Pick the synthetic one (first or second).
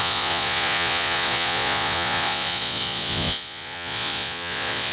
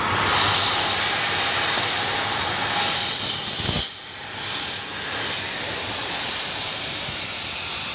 first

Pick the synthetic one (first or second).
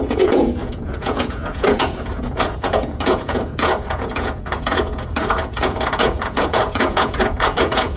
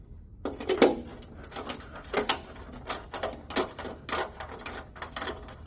first